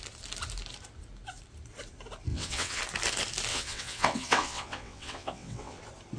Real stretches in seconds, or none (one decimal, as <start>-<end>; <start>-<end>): 0.0-2.3; 2.8-3.5; 5.8-6.2